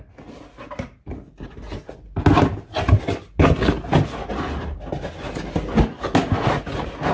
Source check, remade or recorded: recorded